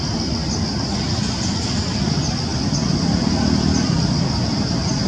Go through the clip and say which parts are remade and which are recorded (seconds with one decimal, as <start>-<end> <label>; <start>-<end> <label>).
0.0-5.1 recorded